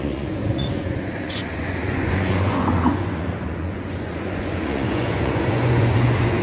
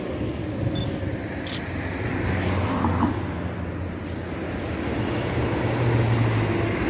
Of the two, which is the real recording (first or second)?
second